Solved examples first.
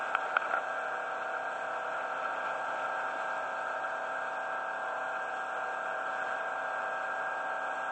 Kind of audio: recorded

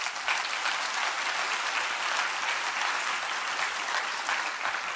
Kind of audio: recorded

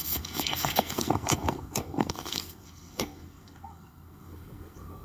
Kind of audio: remade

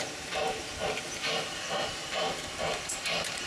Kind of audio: remade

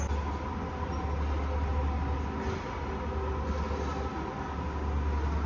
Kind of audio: recorded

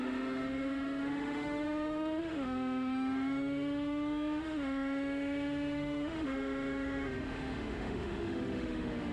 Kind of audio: remade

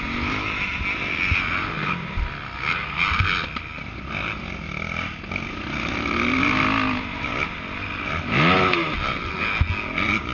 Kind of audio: recorded